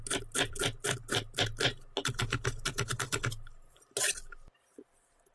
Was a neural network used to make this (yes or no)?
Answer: no